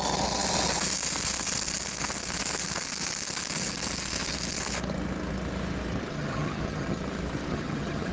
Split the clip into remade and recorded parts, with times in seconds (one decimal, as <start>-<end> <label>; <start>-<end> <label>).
0.0-6.1 recorded; 6.1-7.0 remade; 7.0-7.5 recorded; 7.5-8.1 remade